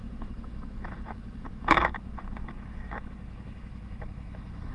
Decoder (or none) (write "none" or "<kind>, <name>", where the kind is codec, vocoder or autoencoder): autoencoder, DAC-VAE